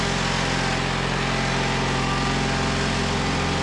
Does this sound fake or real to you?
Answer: real